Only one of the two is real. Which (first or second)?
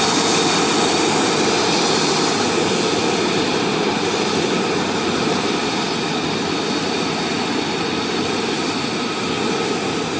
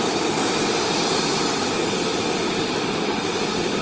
first